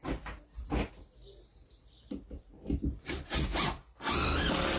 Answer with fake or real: real